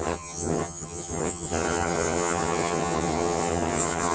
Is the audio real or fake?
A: fake